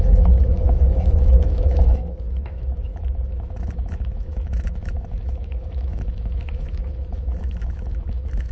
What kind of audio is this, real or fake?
fake